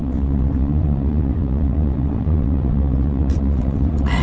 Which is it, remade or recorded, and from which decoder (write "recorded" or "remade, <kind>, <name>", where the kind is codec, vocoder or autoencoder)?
remade, vocoder, WaveNeXt